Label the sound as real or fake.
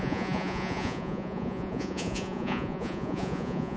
fake